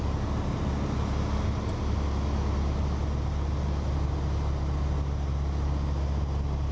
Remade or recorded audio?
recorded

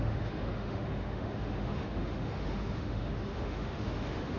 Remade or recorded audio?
remade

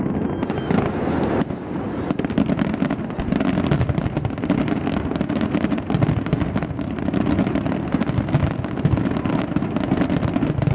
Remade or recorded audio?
recorded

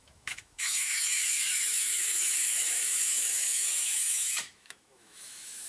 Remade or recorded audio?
remade